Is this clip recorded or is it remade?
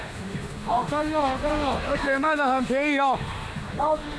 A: remade